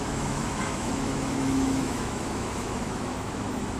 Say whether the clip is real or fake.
fake